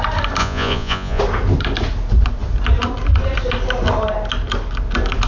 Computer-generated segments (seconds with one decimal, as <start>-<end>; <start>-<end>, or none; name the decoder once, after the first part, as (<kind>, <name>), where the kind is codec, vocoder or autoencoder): 0.4-1.2 (vocoder, Vocos)